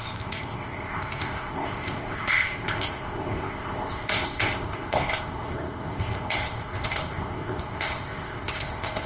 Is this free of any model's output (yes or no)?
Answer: no